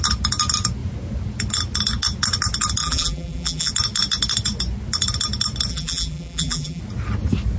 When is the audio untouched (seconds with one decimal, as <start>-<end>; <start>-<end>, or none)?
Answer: 0.0-2.8; 3.7-5.7; 6.8-7.6